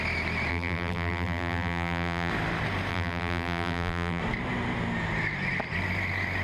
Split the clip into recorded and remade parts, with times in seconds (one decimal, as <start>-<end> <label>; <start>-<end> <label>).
0.0-0.5 recorded; 0.5-2.3 remade; 2.3-2.9 recorded; 2.9-4.2 remade; 4.2-6.4 recorded